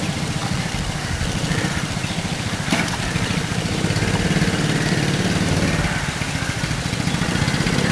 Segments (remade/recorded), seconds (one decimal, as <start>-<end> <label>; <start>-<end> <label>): 0.0-0.4 recorded; 0.4-3.7 remade; 3.7-7.9 recorded